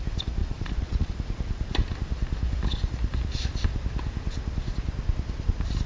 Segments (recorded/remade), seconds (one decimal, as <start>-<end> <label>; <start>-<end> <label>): 0.0-0.4 recorded; 0.4-1.1 remade; 1.1-5.9 recorded